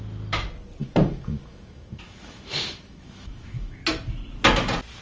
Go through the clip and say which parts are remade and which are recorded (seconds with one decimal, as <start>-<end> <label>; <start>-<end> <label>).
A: 0.0-0.8 recorded; 0.8-3.8 remade; 3.8-5.0 recorded

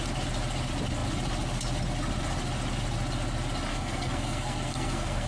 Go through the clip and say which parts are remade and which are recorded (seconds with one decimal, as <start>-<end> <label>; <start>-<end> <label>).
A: 0.0-3.7 recorded; 3.7-5.3 remade